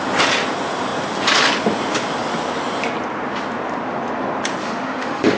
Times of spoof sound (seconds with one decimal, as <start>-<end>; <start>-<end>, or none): 4.6-5.4